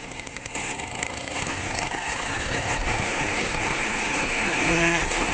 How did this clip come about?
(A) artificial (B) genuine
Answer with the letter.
A